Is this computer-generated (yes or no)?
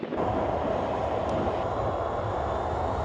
no